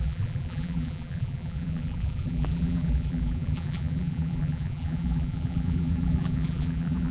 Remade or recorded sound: remade